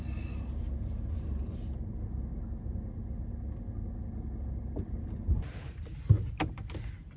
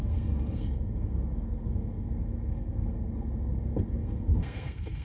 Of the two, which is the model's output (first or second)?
second